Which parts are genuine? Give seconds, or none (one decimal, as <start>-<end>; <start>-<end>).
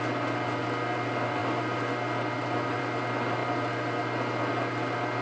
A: 0.0-5.2